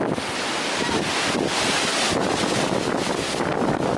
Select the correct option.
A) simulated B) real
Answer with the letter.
B